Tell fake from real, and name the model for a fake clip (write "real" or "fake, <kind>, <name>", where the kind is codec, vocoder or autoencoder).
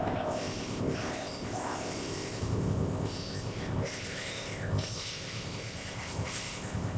fake, codec, ZipCodec